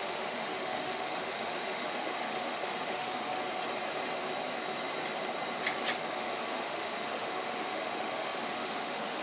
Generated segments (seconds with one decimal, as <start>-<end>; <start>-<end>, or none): 0.0-3.4; 6.1-9.2